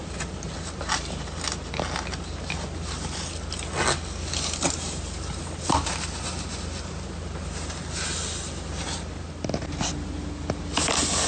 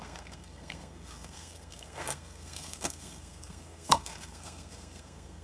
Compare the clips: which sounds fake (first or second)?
second